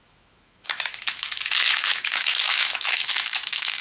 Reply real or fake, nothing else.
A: fake